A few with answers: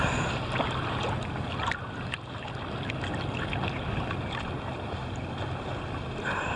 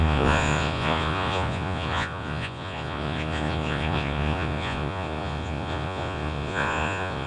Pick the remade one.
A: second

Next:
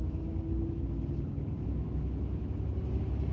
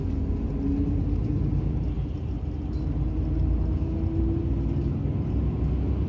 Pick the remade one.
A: first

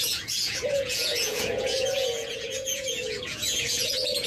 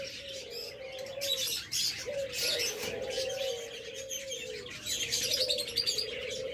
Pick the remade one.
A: first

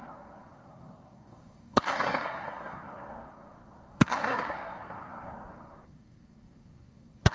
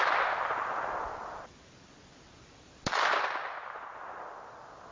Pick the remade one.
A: first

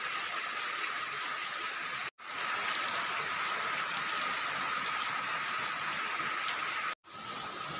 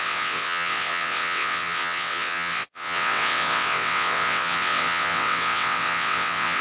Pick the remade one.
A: second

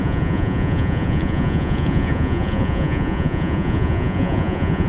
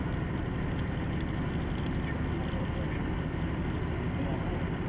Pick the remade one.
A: first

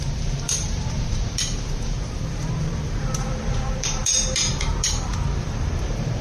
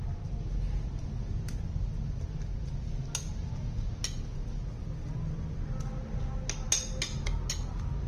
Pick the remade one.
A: first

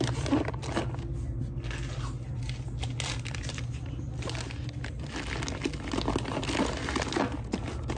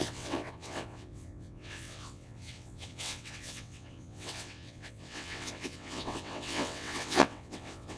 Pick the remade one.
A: second